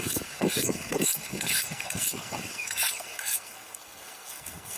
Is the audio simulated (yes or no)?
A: yes